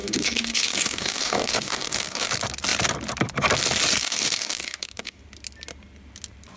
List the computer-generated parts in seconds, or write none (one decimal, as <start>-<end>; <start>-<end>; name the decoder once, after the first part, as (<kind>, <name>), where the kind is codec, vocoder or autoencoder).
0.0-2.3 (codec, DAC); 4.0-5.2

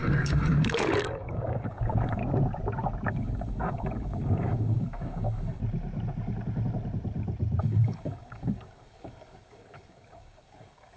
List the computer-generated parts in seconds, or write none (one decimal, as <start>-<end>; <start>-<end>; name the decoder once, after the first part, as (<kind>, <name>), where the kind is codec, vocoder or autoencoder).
0.0-2.2 (codec, DAC); 3.1-5.6; 7.6-11.0

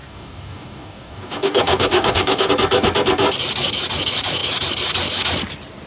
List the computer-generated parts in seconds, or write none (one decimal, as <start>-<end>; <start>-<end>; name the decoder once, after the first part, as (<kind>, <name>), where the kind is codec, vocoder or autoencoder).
0.0-2.5 (codec, DAC)